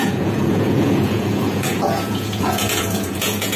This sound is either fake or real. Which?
fake